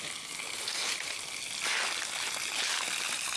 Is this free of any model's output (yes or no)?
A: yes